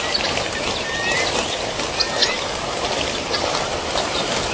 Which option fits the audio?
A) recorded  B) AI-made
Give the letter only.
A